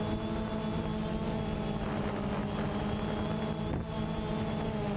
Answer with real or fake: real